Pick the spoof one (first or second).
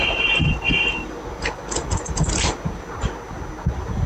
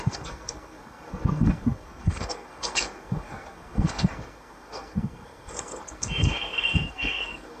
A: second